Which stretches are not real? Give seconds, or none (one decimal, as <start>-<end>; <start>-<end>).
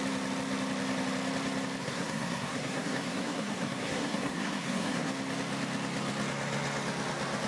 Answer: 1.8-5.1